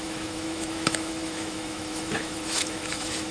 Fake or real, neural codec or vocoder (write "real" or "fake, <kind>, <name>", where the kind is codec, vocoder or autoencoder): fake, autoencoder, DAC-VAE